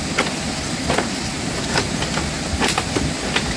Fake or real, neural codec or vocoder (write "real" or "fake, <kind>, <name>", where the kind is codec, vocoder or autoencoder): real